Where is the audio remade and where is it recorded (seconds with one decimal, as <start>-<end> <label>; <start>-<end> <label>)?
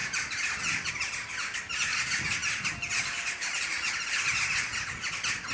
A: 0.0-5.5 recorded